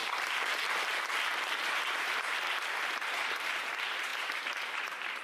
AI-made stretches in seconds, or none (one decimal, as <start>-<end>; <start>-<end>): 0.0-5.2

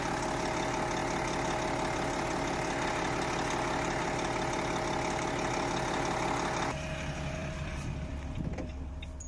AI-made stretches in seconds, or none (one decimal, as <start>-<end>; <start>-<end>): 7.4-8.9